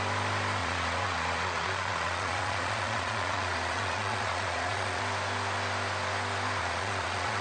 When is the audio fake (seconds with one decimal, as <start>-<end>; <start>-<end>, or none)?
0.6-5.0; 6.6-7.4